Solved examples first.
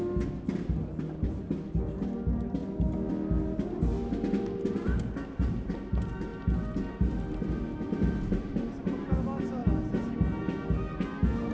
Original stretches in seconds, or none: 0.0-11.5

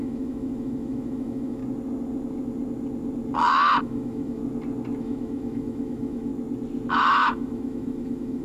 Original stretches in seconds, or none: 1.6-3.8; 4.4-5.0; 6.3-6.9

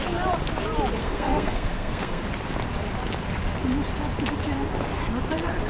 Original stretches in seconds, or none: 0.0-1.0; 2.2-5.7